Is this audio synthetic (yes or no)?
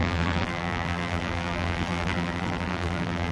yes